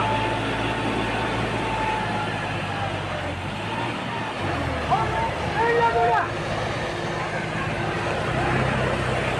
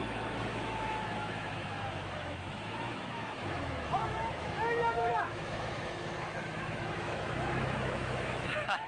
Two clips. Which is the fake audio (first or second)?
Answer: second